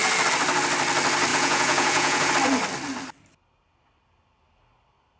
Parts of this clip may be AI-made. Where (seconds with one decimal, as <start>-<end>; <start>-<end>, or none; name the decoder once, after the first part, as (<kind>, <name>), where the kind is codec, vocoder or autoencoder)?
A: 1.3-2.3 (vocoder, Vocos)